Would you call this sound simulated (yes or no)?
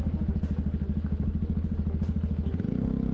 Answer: no